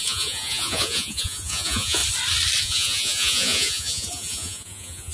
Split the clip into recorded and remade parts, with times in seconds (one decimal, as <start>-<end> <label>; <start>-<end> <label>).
0.0-2.0 remade; 2.0-2.6 recorded; 2.6-5.1 remade